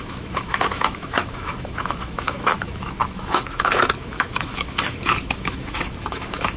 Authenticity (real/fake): fake